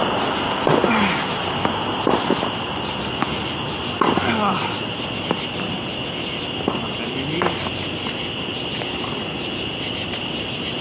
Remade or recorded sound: recorded